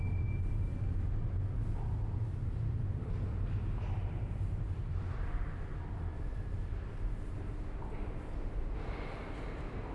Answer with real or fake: real